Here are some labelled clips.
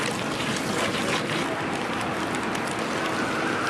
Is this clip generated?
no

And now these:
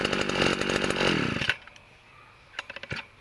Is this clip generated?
no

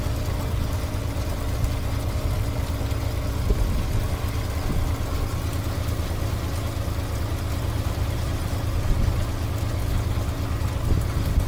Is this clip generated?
no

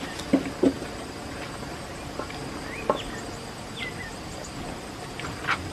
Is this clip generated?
no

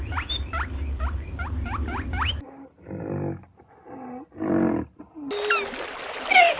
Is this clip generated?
no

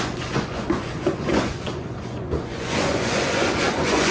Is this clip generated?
yes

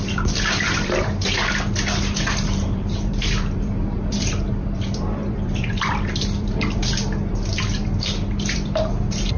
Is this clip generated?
yes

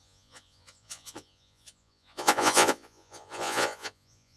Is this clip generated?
yes